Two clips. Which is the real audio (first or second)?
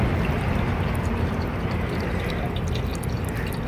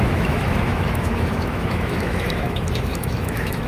first